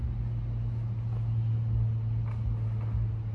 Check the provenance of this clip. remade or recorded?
recorded